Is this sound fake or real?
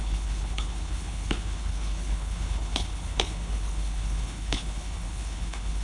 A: fake